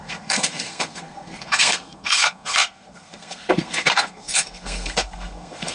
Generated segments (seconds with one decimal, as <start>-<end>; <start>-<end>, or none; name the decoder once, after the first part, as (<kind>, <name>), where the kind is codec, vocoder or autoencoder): 0.0-5.7 (codec, SNAC)